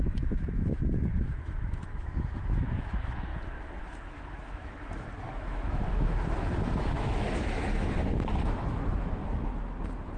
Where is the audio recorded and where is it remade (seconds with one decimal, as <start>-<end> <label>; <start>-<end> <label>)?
0.0-3.3 remade; 3.3-3.8 recorded; 3.8-9.5 remade; 9.5-10.2 recorded